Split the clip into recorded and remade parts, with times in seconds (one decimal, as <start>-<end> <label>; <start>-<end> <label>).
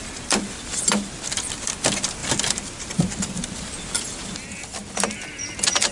0.0-2.2 recorded; 2.2-3.1 remade; 3.1-5.9 recorded